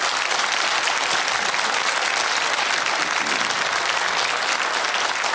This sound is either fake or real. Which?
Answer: real